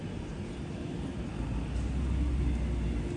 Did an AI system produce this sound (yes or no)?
no